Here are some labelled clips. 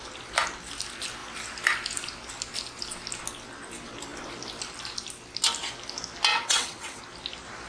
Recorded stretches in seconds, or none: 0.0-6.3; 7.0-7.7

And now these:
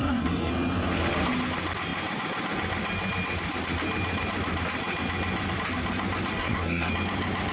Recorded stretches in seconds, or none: 0.5-6.3; 6.9-7.5